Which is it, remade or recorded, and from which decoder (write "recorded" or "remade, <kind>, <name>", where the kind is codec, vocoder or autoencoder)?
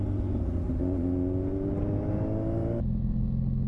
recorded